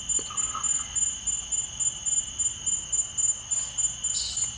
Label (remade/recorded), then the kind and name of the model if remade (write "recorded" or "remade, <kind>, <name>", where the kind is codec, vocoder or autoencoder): recorded